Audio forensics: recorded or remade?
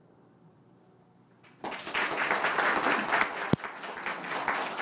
recorded